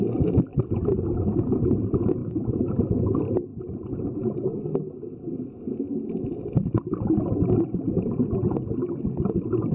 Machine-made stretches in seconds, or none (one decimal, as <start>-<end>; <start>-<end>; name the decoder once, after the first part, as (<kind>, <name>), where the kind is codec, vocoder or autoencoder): 2.2-2.7 (autoencoder, DAC-VAE)